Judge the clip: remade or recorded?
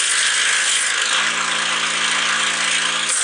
recorded